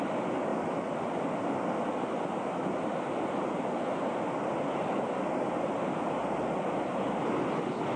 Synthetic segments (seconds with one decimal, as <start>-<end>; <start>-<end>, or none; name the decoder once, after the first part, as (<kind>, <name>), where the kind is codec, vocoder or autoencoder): none